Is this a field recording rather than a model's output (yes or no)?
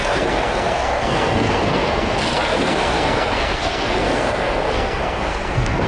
no